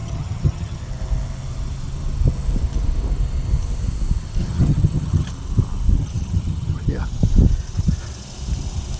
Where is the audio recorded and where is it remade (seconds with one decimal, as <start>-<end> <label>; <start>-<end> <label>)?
0.0-0.8 remade; 0.8-4.4 recorded; 4.4-5.3 remade; 5.3-6.0 recorded; 6.0-6.9 remade; 6.9-9.0 recorded